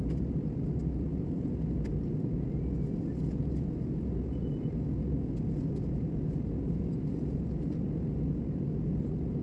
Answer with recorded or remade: recorded